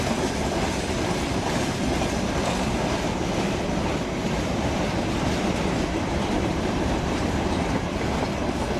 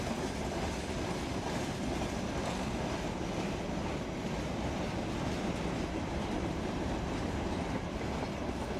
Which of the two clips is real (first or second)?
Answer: second